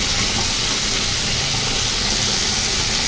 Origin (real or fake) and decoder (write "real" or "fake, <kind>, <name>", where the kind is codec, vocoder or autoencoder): real